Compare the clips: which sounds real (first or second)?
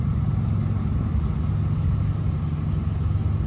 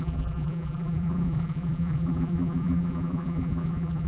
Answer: first